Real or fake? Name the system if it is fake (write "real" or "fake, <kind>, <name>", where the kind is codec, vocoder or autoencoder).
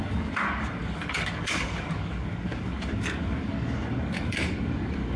fake, codec, DAC